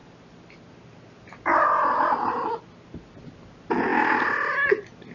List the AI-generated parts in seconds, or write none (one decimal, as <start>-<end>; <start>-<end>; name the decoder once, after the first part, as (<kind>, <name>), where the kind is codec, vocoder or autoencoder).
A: none